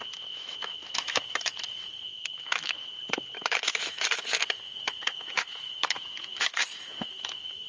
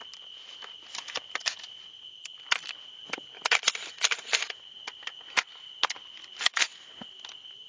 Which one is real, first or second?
second